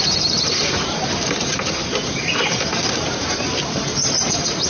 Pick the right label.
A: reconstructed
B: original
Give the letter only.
A